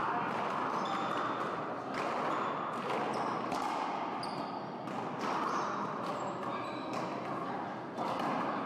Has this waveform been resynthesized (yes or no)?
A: no